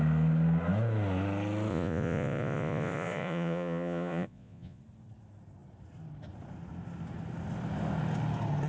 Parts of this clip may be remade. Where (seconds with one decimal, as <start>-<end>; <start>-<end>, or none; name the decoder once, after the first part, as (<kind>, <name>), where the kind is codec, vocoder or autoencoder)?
1.7-4.8 (vocoder, Vocos)